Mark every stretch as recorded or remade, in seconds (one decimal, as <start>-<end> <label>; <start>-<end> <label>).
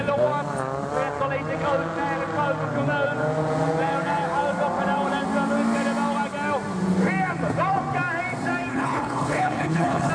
0.0-8.7 recorded; 8.7-10.1 remade